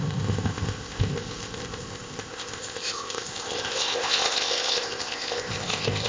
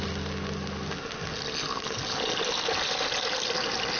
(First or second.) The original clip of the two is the second